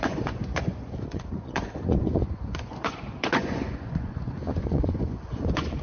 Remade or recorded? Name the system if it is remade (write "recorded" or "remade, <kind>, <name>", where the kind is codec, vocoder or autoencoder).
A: remade, vocoder, Vocos